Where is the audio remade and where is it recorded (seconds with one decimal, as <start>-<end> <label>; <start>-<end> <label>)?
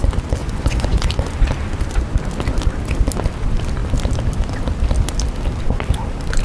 0.0-0.4 recorded; 0.4-1.1 remade; 1.1-6.4 recorded